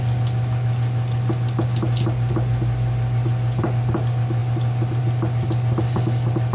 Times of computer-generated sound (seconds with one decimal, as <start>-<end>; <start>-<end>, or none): none